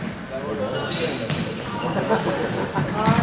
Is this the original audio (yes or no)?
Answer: yes